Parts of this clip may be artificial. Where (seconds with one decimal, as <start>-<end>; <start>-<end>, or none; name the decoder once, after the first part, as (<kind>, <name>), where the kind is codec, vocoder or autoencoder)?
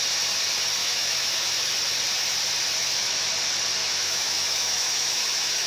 0.8-1.7 (autoencoder, DAC-VAE); 2.8-3.3; 3.8-5.7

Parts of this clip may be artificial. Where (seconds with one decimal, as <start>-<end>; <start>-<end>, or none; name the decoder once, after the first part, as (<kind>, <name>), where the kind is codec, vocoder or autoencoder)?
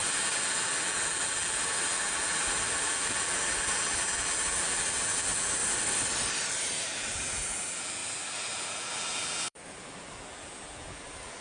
0.0-5.6 (vocoder, BigVGAN v2); 6.6-11.4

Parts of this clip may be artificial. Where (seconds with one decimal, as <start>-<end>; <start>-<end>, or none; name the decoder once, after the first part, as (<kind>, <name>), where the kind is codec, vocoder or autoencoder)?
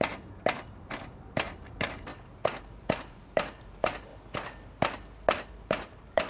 0.0-2.1 (vocoder, BigVGAN v2); 2.6-4.1; 5.5-6.3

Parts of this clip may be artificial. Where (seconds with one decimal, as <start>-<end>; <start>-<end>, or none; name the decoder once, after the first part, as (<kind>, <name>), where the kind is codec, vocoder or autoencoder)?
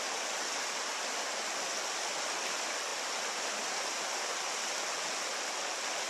5.3-6.1 (vocoder, BigVGAN v2)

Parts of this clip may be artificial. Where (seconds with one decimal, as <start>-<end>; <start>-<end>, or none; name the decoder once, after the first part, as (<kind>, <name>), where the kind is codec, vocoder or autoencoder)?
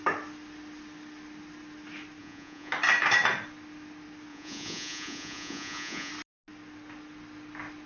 2.2-2.7 (vocoder, Vocos); 4.3-6.1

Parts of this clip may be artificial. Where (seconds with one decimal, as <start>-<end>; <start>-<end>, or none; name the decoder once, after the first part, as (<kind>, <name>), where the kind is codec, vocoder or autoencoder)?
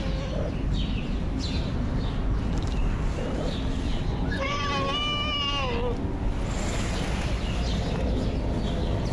4.1-4.7 (vocoder, Vocos)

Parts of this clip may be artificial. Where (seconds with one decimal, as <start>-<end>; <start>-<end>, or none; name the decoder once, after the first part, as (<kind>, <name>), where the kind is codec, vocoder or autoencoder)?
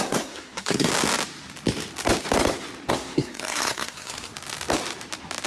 0.0-0.9 (codec, SNAC); 2.9-4.3